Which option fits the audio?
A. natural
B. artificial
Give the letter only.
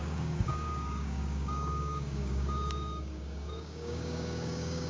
B